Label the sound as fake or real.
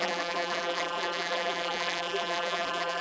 fake